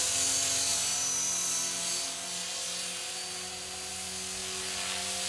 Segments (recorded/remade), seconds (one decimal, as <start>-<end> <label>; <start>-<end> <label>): 0.0-5.3 recorded